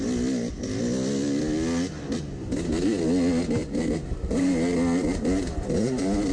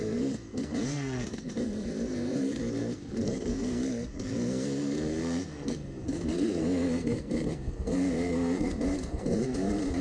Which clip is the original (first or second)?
first